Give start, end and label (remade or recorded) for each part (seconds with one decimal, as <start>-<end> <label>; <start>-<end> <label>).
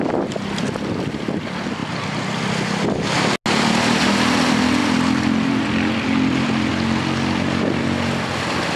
0.0-4.8 recorded; 4.8-6.7 remade; 6.7-8.8 recorded